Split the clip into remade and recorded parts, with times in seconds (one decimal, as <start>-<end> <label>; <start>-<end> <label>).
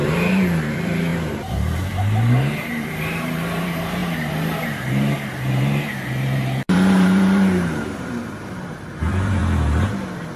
0.0-9.4 remade; 9.4-10.4 recorded